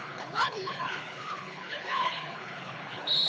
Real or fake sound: fake